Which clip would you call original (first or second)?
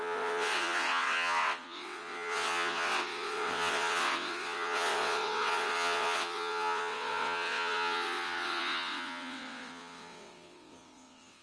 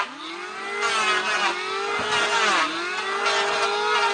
second